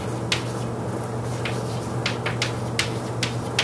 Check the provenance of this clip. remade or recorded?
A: recorded